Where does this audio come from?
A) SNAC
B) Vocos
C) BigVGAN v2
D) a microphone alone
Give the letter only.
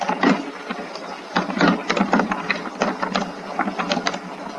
D